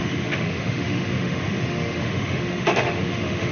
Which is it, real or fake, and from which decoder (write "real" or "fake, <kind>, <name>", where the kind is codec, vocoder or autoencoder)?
fake, autoencoder, DAC-VAE